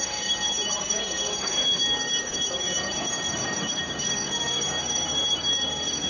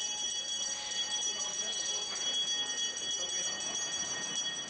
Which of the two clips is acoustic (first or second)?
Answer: second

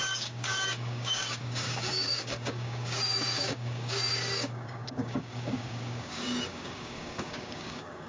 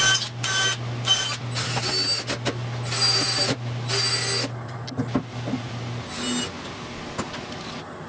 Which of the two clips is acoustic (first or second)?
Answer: second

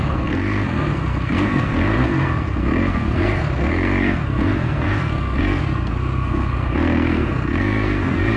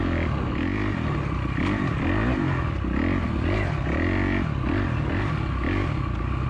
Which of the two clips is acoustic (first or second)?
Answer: second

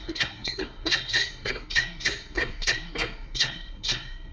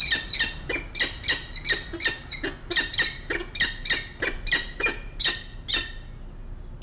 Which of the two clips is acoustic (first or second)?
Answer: second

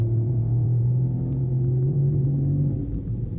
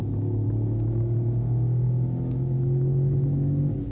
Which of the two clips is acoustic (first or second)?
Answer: second